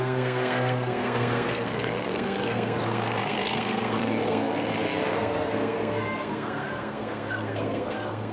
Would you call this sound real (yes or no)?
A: no